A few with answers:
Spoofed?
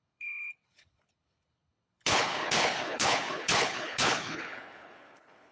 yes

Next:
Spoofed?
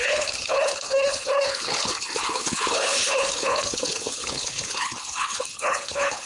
yes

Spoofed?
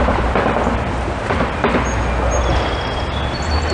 no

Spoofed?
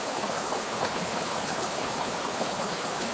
yes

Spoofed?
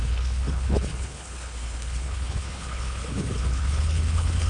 yes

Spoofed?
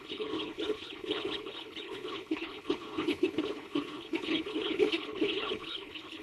yes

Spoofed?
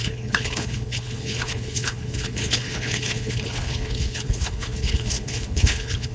yes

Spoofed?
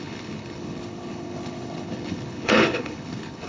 yes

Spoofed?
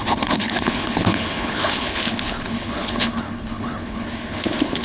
yes